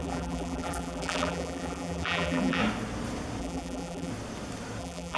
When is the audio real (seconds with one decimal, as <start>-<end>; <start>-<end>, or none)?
2.6-3.4; 4.1-4.8